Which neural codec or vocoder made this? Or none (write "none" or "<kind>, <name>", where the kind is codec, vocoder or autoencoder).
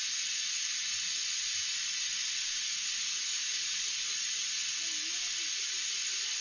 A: none